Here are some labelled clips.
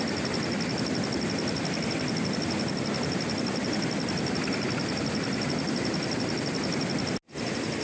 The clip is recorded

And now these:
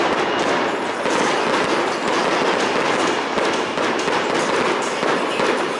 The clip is recorded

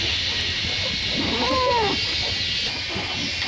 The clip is recorded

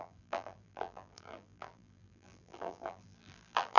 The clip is remade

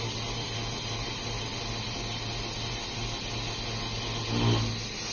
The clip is recorded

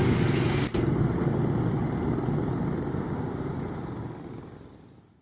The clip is recorded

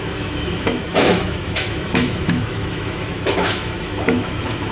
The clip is remade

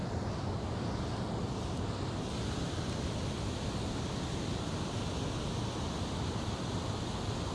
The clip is recorded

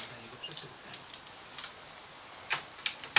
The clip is recorded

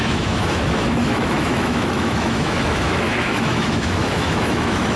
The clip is remade